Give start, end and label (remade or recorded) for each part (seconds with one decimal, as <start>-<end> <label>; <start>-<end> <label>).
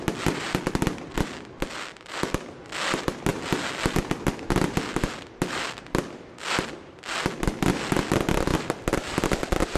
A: 0.0-9.8 recorded